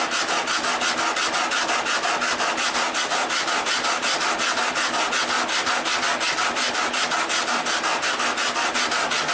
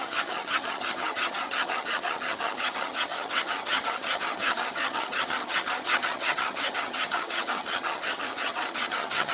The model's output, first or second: second